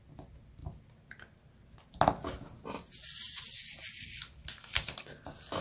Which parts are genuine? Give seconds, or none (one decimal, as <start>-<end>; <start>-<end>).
0.0-5.6